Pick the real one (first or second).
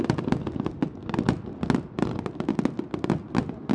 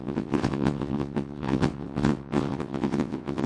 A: first